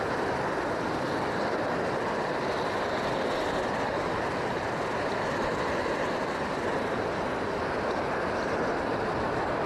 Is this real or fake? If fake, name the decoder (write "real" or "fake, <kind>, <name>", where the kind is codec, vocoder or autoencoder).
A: real